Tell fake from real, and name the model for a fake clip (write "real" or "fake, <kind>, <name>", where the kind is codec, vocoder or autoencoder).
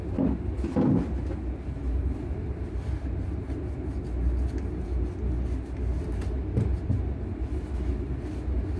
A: real